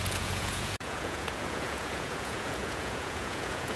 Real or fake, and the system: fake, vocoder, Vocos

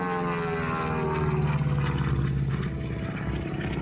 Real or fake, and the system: real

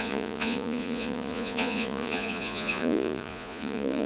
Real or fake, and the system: fake, vocoder, Vocos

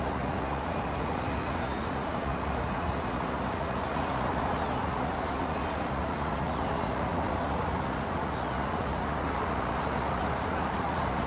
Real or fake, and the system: fake, vocoder, Vocos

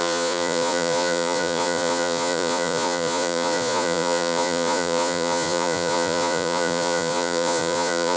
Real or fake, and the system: fake, vocoder, Vocos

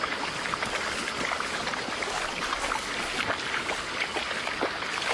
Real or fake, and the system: real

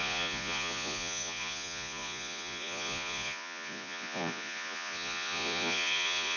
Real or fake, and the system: fake, vocoder, Vocos